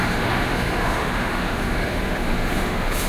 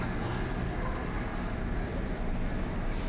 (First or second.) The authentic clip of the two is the second